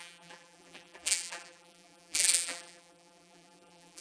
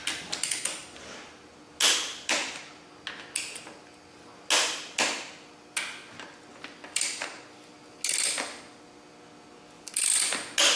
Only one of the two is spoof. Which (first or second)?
first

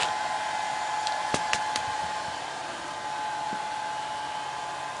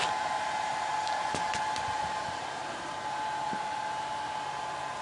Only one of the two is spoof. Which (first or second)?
second